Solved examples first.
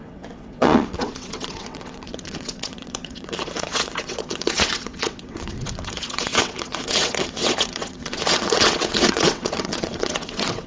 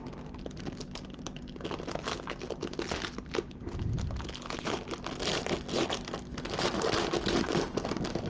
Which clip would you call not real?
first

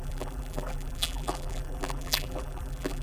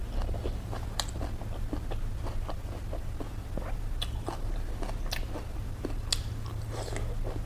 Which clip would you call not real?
first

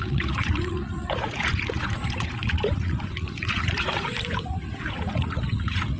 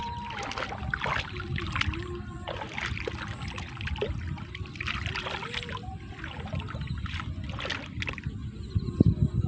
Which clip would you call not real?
first